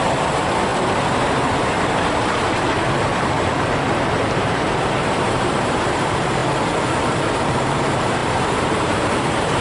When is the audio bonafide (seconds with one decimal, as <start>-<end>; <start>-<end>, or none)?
3.1-4.2; 6.4-7.1